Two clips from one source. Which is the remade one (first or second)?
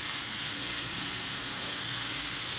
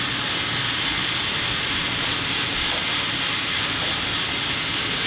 first